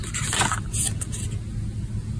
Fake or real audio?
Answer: real